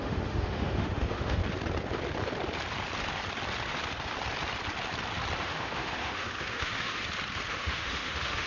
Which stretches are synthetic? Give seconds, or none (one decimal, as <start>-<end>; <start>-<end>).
0.0-1.4; 5.4-7.0; 7.5-8.5